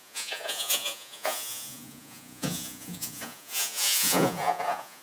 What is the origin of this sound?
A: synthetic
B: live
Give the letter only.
A